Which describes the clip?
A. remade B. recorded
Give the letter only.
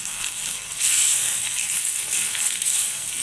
A